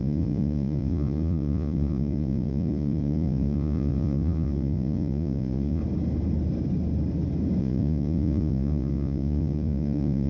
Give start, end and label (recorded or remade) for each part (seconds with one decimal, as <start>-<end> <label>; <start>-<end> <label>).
0.0-5.8 remade; 5.8-7.6 recorded; 7.6-10.3 remade